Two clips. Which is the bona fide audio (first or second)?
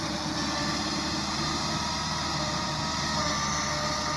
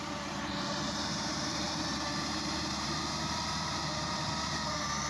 first